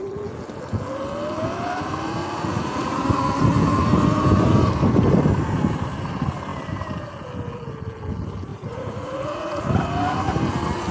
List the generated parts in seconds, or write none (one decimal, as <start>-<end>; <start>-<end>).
2.2-2.9; 8.5-9.7